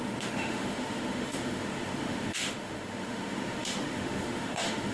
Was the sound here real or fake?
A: fake